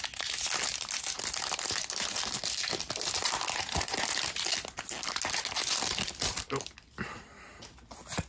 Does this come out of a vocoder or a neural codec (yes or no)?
no